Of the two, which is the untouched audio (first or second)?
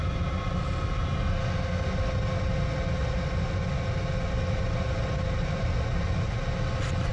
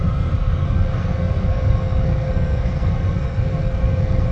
first